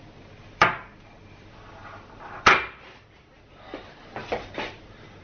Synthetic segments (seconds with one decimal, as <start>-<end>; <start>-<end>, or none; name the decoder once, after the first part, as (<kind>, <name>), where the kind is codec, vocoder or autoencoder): 0.0-5.2 (vocoder, BigVGAN v2)